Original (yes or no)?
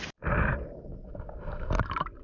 yes